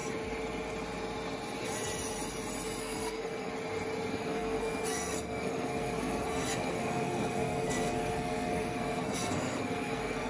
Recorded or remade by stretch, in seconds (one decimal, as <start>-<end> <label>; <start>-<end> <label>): 0.0-2.8 recorded; 2.8-3.5 remade; 3.5-4.1 recorded; 4.1-10.3 remade